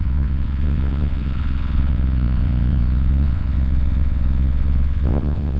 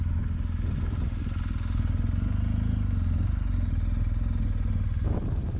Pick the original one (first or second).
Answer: second